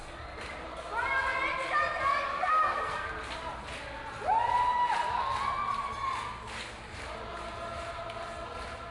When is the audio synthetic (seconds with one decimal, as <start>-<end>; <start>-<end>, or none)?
2.3-3.1